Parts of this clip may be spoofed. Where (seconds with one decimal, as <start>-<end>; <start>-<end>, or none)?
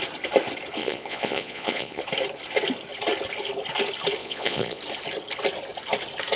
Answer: 0.8-2.0; 4.2-4.8